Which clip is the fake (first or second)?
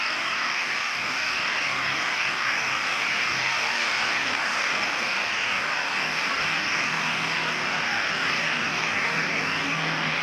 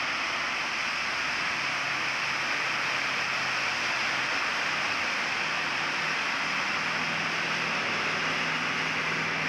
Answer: first